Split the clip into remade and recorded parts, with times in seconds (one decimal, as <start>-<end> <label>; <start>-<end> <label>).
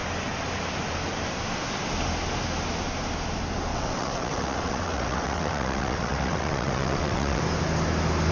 0.0-3.7 recorded; 3.7-7.4 remade; 7.4-8.3 recorded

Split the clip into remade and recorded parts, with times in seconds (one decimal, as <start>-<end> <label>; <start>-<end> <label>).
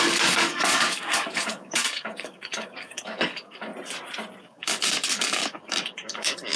0.0-3.7 remade; 3.7-4.4 recorded; 4.4-6.6 remade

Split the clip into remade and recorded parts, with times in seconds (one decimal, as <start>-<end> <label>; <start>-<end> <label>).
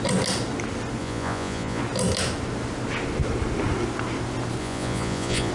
0.0-1.0 recorded; 1.0-1.8 remade; 1.8-4.6 recorded; 4.6-5.5 remade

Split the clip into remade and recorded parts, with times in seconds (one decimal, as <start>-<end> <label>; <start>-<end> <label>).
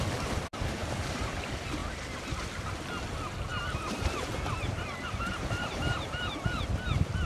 0.0-0.8 recorded; 0.8-1.3 remade; 1.3-3.5 recorded; 3.5-6.4 remade; 6.4-7.2 recorded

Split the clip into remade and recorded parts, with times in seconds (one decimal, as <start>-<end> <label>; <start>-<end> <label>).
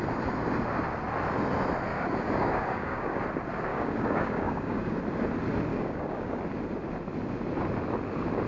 0.0-1.9 recorded; 1.9-3.2 remade; 3.2-3.7 recorded; 3.7-5.0 remade; 5.0-5.7 recorded; 5.7-6.4 remade; 6.4-8.5 recorded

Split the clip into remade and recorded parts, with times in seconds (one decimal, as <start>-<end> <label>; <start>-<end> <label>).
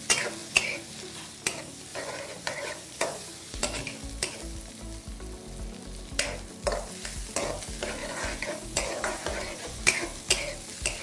0.0-0.4 recorded; 0.4-0.9 remade; 0.9-1.9 recorded; 1.9-3.6 remade; 3.6-8.0 recorded; 8.0-9.8 remade; 9.8-11.0 recorded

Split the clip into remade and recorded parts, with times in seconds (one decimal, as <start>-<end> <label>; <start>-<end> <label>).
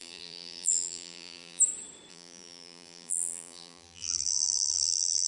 0.0-1.6 remade; 1.6-2.1 recorded; 2.1-5.3 remade